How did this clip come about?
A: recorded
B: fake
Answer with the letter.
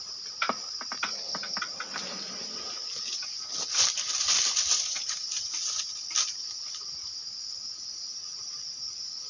A